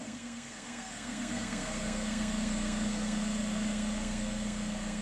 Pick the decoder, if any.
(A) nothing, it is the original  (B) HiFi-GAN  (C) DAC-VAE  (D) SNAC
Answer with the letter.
D